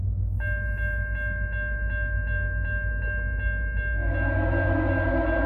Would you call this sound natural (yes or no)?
yes